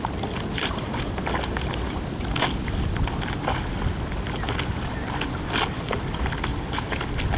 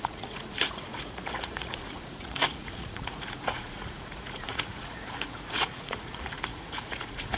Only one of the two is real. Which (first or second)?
first